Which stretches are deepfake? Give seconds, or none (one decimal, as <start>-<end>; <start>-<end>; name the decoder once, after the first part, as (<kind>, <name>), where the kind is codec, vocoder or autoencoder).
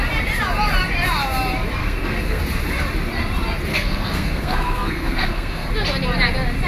1.8-2.4 (codec, SNAC); 3.7-5.7